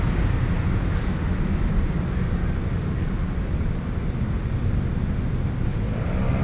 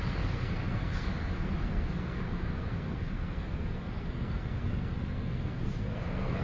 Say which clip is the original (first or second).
first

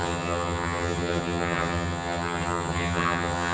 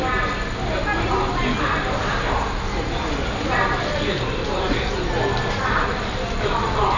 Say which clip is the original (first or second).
second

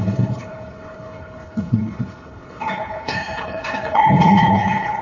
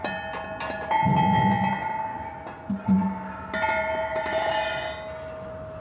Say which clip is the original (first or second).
second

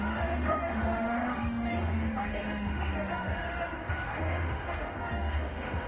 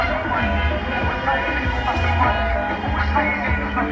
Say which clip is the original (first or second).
second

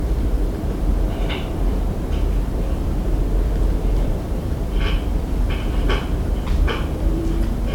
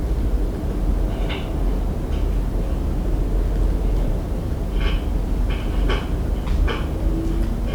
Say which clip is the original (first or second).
second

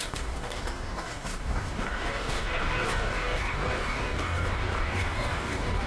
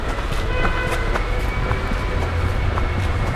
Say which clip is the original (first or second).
second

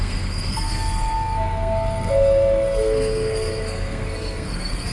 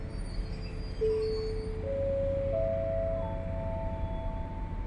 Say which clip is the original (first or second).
second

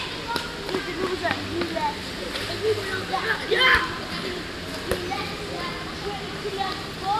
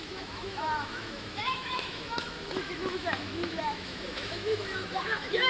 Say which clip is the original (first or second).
first